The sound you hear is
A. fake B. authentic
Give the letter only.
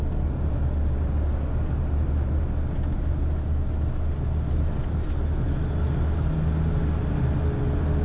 B